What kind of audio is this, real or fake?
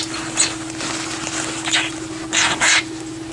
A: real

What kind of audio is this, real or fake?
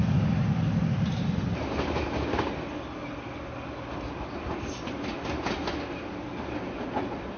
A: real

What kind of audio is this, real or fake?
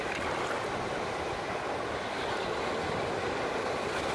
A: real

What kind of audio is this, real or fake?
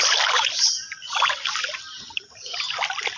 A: real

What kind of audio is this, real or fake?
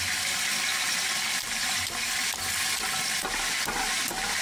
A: real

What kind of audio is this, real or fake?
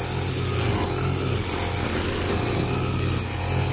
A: real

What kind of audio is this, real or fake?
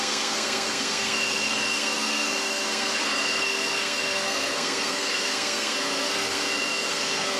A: fake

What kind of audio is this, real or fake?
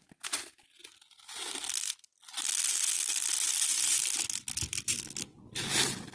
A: real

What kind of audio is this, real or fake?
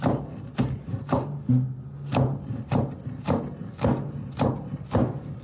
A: real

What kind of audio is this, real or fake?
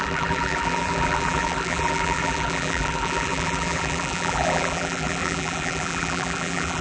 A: fake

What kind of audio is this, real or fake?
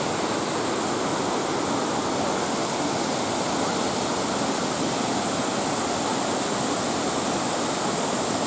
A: real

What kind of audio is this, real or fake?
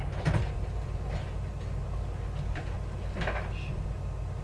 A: real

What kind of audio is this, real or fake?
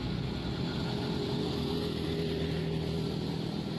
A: real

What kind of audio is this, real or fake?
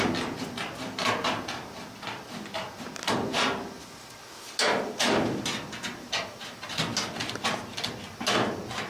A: real